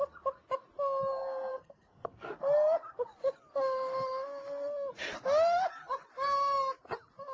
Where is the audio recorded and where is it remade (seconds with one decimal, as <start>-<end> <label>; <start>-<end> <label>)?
0.0-1.5 recorded; 1.5-2.3 remade; 2.3-7.3 recorded